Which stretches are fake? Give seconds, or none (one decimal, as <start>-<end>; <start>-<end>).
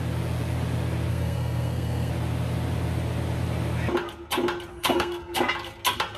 1.1-2.1; 4.7-5.4